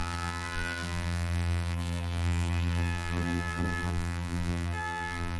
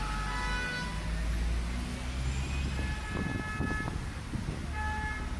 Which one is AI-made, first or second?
first